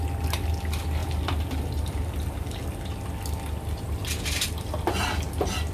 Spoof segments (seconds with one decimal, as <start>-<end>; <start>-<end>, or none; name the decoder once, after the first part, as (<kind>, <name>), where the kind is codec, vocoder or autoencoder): none